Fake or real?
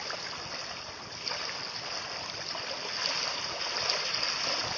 real